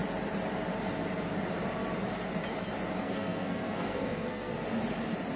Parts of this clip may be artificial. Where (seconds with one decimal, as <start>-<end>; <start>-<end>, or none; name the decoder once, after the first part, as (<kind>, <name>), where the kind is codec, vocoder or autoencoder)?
3.0-4.5 (codec, SNAC)